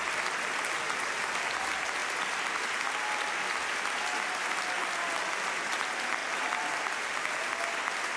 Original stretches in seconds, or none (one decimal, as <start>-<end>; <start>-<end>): 0.0-2.0; 2.7-6.2; 7.1-8.2